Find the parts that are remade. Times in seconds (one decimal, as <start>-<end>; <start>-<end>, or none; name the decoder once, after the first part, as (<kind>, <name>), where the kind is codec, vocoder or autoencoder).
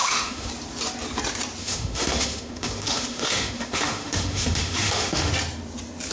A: 0.0-0.5 (autoencoder, DAC-VAE); 1.6-5.3